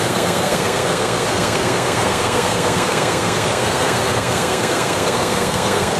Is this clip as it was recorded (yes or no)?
no